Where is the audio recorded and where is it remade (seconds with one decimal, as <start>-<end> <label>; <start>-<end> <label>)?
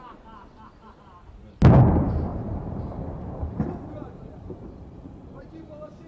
0.0-2.3 recorded; 2.3-5.5 remade; 5.5-6.1 recorded